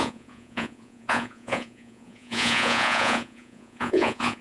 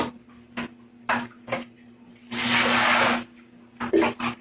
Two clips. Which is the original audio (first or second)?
second